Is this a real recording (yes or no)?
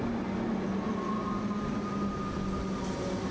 yes